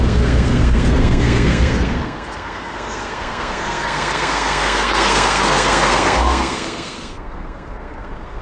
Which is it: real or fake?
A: fake